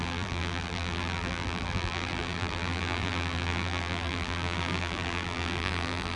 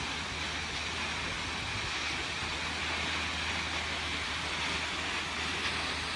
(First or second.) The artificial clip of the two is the first